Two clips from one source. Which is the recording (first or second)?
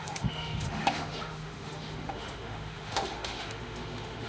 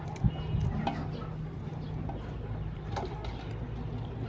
second